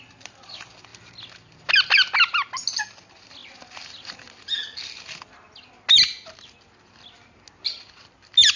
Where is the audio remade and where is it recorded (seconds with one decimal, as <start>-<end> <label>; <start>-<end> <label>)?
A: 0.0-8.6 recorded